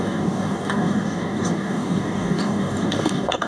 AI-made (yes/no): yes